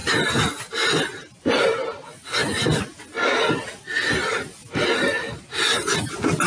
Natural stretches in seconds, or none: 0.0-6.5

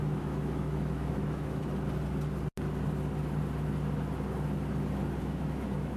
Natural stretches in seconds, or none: 1.6-5.2

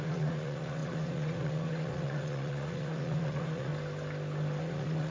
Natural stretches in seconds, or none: 3.7-4.6